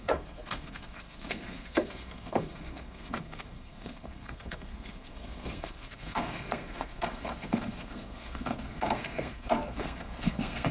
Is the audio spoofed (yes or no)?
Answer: yes